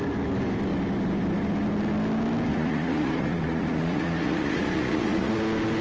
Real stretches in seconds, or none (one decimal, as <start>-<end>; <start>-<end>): 0.0-2.5; 5.3-5.8